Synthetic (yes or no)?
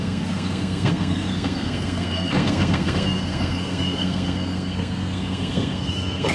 yes